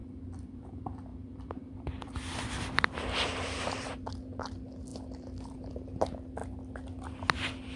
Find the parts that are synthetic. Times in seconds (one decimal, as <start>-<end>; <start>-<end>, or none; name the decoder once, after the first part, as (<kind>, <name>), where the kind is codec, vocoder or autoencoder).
0.0-0.7 (vocoder, BigVGAN v2); 1.1-4.1; 4.9-5.7